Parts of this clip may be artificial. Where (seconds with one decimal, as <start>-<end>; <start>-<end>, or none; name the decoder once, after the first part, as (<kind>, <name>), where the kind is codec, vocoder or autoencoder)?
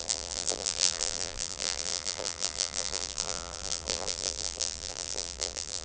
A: 0.0-5.8 (vocoder, BigVGAN v2)